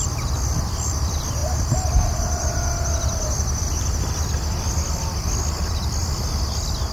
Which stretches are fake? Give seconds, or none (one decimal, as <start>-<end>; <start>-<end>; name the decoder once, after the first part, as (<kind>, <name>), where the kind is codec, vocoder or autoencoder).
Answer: none